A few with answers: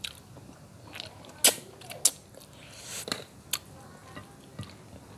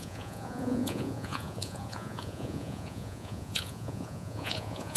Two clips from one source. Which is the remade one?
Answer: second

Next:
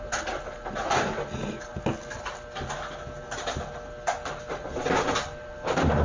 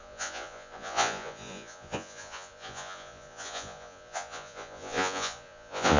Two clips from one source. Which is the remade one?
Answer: second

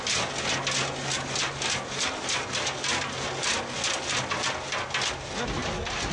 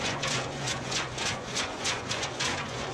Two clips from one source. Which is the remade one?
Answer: second